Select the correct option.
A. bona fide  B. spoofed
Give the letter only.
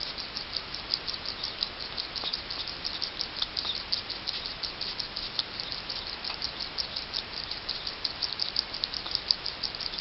A